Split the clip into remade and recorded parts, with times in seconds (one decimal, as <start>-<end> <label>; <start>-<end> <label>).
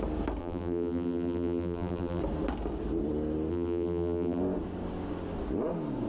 0.0-0.4 recorded; 0.4-2.2 remade; 2.2-3.5 recorded; 3.5-4.4 remade; 4.4-6.1 recorded